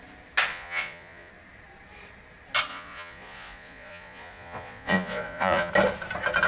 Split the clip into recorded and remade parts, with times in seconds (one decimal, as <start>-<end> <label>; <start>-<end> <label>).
0.0-0.5 recorded; 0.5-1.3 remade; 1.3-2.7 recorded; 2.7-5.7 remade; 5.7-6.5 recorded